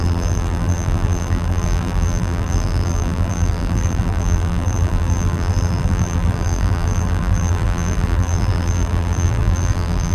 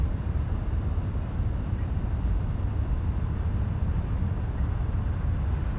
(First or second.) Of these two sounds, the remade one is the first